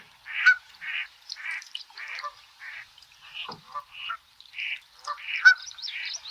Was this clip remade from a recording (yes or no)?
yes